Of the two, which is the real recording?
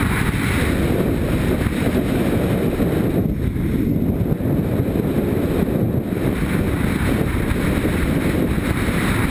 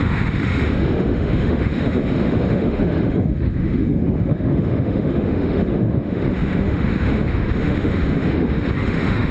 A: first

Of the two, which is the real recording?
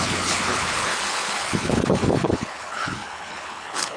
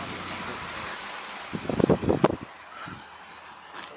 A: second